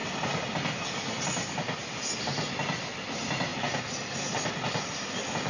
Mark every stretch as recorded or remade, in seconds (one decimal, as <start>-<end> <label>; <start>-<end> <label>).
0.0-5.5 recorded